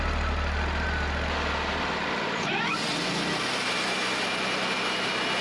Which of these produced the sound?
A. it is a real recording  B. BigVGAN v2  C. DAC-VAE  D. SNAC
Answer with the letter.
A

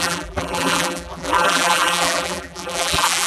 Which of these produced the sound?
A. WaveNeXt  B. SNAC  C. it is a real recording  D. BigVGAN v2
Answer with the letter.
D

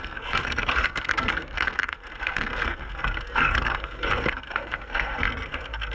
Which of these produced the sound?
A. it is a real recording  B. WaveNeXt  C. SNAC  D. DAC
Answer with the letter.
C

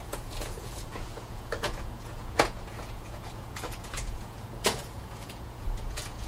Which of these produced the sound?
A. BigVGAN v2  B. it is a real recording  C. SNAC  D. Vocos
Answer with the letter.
D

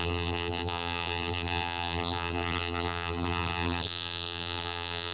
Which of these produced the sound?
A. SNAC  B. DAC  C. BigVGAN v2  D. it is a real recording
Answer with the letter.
C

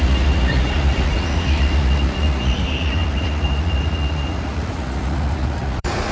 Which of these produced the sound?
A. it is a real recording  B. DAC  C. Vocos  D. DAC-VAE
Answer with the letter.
C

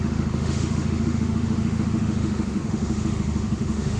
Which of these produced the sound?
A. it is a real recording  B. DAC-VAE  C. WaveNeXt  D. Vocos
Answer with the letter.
B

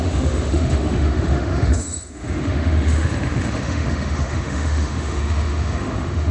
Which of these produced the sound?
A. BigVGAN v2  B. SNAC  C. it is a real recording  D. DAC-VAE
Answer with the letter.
D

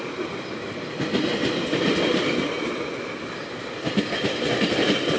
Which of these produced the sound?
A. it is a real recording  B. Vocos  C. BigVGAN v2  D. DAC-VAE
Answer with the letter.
A